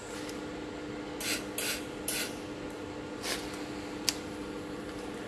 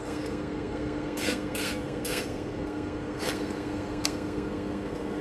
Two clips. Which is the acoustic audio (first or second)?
first